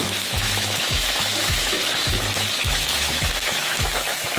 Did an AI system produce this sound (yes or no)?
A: yes